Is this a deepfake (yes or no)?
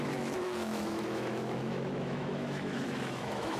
yes